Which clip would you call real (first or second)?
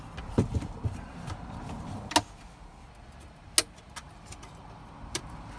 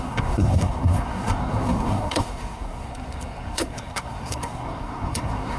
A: first